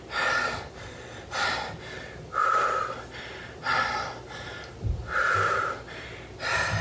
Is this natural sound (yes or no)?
yes